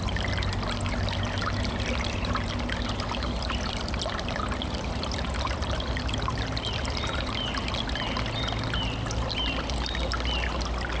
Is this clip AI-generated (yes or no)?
no